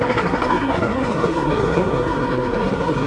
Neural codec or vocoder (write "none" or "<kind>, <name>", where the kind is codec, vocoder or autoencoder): codec, SNAC